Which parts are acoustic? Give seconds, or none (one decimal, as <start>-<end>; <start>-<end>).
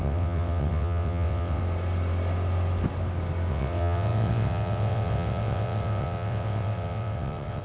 1.6-3.5